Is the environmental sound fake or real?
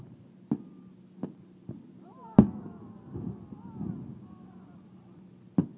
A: real